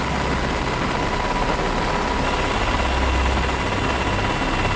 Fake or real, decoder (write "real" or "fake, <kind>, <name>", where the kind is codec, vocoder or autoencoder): real